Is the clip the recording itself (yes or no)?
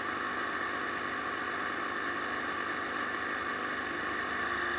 yes